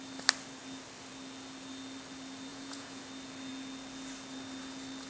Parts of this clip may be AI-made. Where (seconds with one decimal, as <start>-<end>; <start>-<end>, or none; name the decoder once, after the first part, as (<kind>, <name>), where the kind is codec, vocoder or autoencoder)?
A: 2.5-3.0 (vocoder, Vocos)